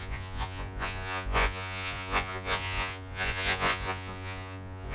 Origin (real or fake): fake